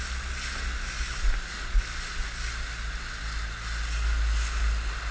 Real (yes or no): yes